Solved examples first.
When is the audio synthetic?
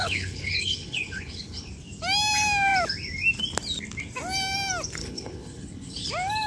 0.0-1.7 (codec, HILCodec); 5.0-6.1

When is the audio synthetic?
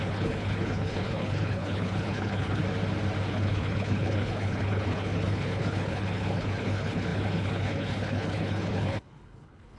0.0-2.6 (codec, HILCodec); 3.3-9.8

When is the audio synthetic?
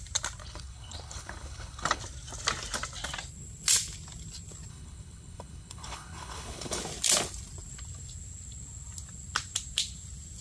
0.4-2.0 (codec, HILCodec); 4.7-6.8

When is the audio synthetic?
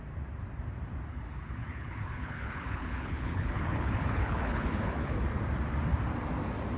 1.1-5.2 (codec, HILCodec)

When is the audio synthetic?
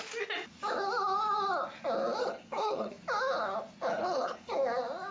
2.2-2.9 (codec, HILCodec); 3.9-4.5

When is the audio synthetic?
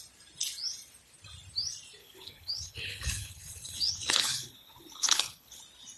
2.0-5.6 (codec, HILCodec)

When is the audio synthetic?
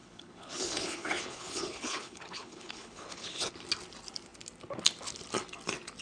0.0-3.5 (codec, HILCodec)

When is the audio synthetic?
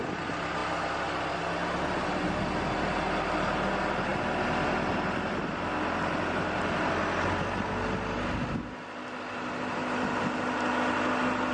none